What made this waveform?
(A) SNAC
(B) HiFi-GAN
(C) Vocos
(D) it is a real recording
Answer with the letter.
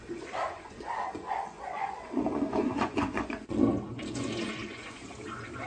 C